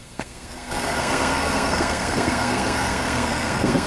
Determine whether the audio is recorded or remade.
remade